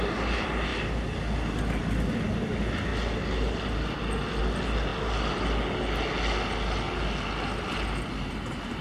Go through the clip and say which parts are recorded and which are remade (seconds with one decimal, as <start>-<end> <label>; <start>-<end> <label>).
0.0-8.8 recorded